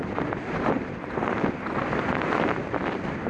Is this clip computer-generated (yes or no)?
yes